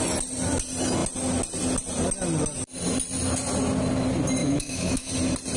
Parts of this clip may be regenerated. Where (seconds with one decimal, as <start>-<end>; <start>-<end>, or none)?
4.4-5.1